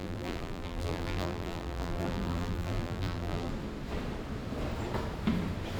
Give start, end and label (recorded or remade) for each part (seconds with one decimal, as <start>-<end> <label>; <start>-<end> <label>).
0.0-3.5 remade; 3.5-5.8 recorded